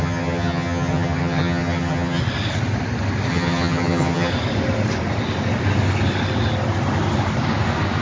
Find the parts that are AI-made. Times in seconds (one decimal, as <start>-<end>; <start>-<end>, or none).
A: 0.0-2.2; 3.3-4.3